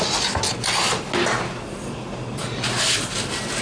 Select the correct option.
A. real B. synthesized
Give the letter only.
A